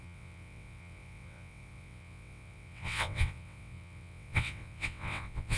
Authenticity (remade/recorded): remade